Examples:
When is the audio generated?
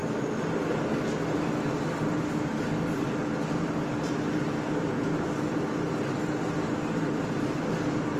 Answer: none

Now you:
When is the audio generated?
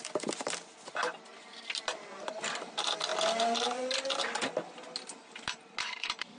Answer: none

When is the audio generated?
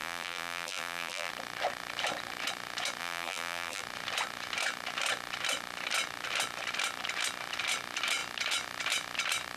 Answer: 0.0-1.3 (vocoder, BigVGAN v2); 3.0-3.8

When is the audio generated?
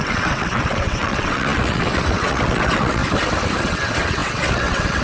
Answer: 0.0-3.0 (vocoder, WaveNeXt); 3.6-5.0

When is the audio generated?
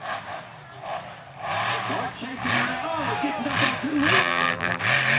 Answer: 4.2-4.8 (vocoder, BigVGAN v2)